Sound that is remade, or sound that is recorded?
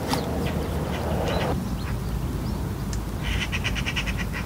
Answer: recorded